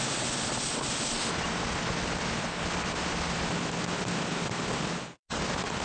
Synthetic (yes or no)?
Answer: no